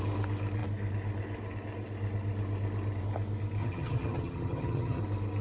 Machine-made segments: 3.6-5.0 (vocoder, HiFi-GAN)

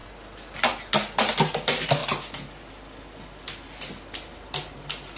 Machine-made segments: none

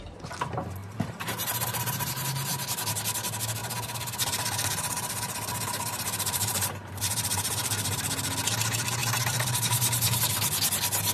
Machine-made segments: 0.8-2.3 (vocoder, BigVGAN v2); 3.6-8.0; 9.0-10.2

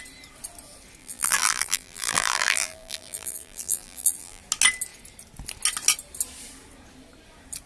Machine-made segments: 1.0-4.4 (vocoder, BigVGAN v2)

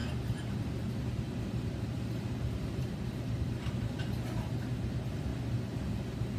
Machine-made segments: 0.0-5.3 (vocoder, BigVGAN v2); 5.9-6.4